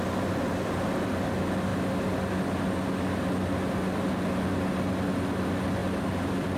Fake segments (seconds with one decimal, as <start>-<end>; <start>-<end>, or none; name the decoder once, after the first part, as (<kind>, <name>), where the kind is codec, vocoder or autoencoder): 5.8-6.6 (vocoder, BigVGAN v2)